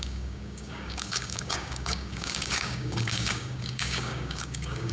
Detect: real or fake fake